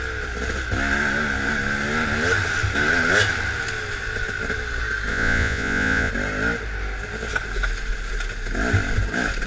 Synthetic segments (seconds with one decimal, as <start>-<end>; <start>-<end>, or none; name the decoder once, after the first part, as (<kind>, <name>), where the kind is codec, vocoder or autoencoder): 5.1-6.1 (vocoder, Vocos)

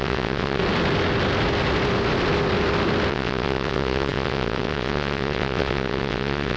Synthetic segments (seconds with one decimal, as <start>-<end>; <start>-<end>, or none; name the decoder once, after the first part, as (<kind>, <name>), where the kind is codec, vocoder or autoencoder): 0.0-0.6 (vocoder, WaveNeXt); 3.1-6.6

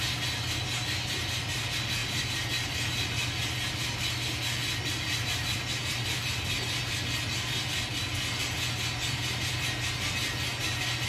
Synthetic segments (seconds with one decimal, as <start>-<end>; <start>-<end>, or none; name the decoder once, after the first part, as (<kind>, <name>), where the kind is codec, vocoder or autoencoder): none